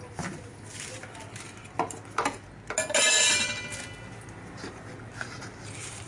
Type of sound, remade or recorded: recorded